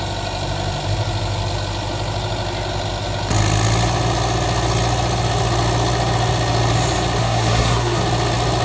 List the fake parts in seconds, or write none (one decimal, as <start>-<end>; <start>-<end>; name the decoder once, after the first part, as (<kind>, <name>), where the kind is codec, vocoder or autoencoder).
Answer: 7.2-8.0 (codec, SNAC)